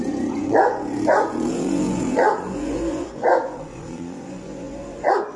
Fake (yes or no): yes